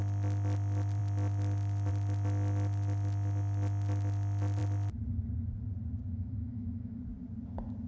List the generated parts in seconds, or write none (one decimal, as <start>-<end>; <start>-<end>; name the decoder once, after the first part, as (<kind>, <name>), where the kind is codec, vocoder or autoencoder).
6.1-7.0 (autoencoder, DAC-VAE)